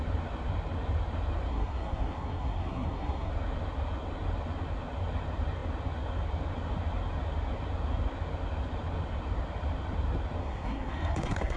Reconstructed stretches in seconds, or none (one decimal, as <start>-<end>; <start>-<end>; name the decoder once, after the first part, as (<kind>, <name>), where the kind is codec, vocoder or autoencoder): 1.5-3.3 (codec, SNAC); 10.4-11.6